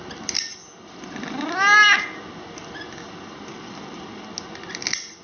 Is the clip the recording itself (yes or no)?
yes